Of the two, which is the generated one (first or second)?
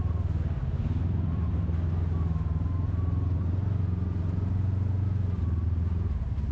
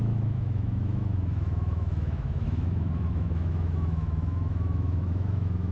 second